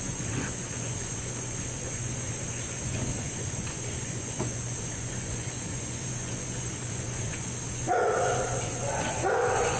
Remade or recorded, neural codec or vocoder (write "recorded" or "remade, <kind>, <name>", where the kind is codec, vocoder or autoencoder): remade, vocoder, Vocos